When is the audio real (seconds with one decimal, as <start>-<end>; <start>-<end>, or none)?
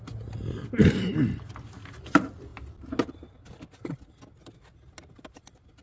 0.0-5.8